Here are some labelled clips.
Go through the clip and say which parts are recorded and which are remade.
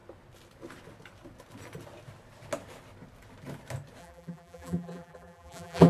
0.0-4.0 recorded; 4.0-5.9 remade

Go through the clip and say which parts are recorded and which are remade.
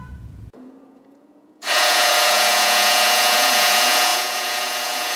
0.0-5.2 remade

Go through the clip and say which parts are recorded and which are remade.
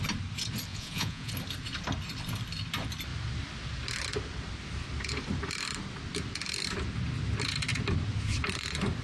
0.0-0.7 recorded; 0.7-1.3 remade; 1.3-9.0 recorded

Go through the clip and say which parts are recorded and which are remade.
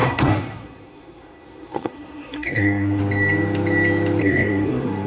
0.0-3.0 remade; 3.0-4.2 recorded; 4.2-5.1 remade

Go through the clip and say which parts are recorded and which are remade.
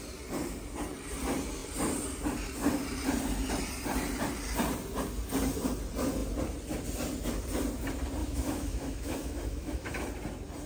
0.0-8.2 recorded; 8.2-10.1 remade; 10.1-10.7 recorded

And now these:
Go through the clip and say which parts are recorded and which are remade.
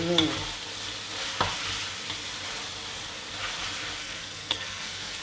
0.0-4.0 recorded; 4.0-5.2 remade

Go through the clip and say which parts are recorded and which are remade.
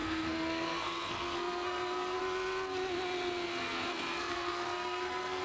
0.0-2.2 remade; 2.2-3.5 recorded; 3.5-5.4 remade